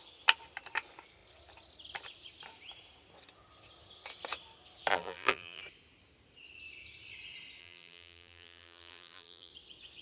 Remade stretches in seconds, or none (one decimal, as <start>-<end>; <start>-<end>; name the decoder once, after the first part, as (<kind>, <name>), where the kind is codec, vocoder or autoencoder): 4.9-5.6 (vocoder, BigVGAN v2); 7.6-9.5

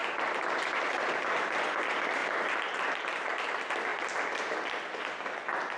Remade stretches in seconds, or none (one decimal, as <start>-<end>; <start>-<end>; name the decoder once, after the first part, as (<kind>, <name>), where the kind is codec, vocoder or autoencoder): none

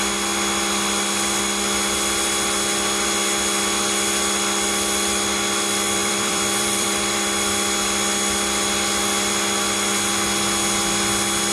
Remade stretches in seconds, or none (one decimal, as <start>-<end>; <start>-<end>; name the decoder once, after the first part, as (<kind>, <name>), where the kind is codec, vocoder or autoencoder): 6.0-7.2 (vocoder, BigVGAN v2)

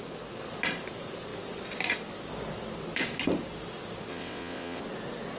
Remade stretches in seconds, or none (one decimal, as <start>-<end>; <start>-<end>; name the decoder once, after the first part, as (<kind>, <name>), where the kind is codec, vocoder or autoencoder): 4.1-4.8 (vocoder, WaveNeXt)